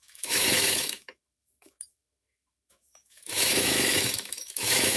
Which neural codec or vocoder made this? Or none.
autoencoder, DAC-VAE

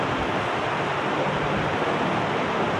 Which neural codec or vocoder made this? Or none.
none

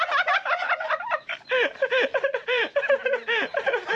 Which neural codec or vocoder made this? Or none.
vocoder, BigVGAN v2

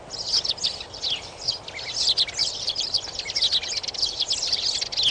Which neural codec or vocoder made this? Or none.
none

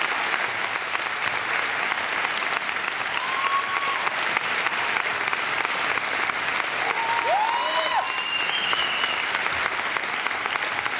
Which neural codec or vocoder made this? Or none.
none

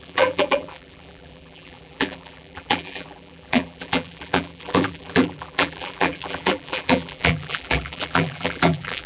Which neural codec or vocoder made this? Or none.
vocoder, BigVGAN v2